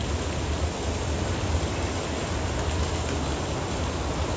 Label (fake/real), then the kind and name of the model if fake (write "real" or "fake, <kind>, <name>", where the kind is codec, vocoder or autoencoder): real